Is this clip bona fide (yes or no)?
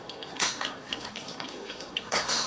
no